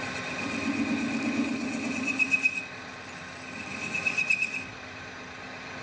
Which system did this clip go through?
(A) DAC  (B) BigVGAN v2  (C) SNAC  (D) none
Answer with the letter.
D